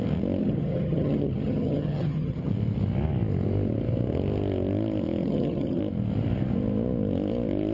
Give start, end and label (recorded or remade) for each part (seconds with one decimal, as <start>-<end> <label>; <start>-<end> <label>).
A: 0.0-0.4 recorded; 0.4-2.5 remade; 2.5-5.2 recorded; 5.2-5.8 remade; 5.8-7.7 recorded